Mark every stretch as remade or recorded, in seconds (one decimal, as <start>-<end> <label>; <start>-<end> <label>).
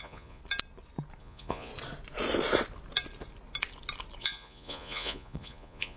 0.0-0.4 remade; 0.4-1.2 recorded; 1.2-1.7 remade; 1.7-4.2 recorded; 4.2-6.0 remade